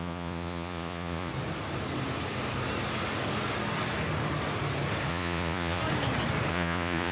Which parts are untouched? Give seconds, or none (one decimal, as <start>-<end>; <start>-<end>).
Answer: 1.3-5.1; 5.8-6.5